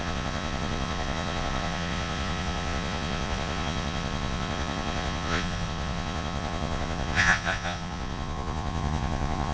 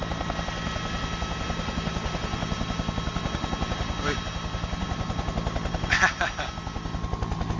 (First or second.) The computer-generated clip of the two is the first